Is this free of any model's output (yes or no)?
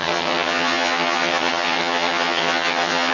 no